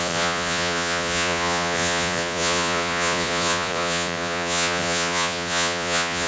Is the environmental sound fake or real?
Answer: fake